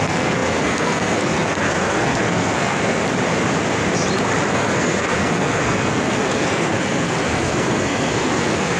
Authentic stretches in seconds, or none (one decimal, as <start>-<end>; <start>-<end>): 3.0-4.5